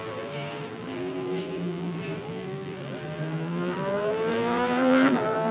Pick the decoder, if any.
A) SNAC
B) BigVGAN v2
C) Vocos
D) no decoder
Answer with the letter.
B